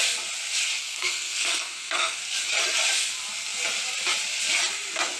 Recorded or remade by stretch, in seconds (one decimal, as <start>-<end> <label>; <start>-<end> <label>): 0.0-0.8 recorded; 0.8-2.2 remade; 2.2-5.2 recorded